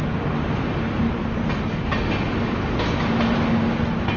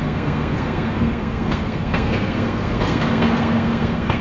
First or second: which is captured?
first